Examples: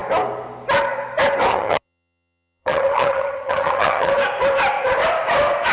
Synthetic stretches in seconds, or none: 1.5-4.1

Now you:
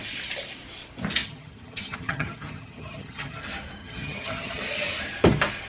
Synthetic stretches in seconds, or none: 1.2-3.4; 3.8-4.6

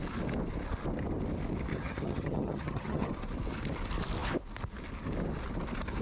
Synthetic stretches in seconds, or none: 1.7-3.1

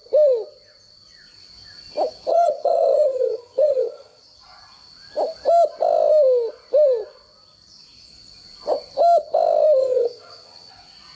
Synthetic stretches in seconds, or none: 2.3-4.2; 9.8-10.7

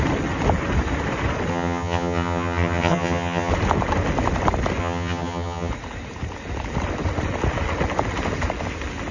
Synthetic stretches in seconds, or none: 1.5-3.5; 4.8-5.7